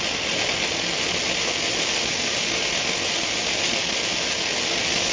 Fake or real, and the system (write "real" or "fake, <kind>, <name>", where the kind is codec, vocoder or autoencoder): real